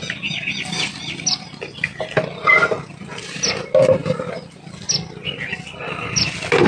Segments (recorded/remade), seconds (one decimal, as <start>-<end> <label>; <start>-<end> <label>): 0.0-6.7 recorded